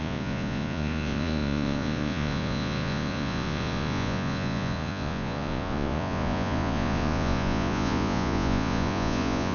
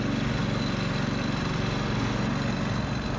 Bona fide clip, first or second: second